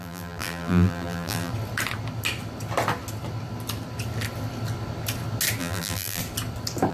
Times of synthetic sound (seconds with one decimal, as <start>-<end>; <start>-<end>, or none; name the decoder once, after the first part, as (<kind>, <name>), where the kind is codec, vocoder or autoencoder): 0.0-1.5 (vocoder, BigVGAN v2); 5.6-6.2